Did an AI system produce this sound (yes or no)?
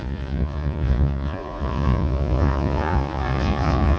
yes